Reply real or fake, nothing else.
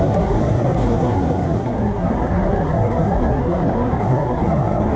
fake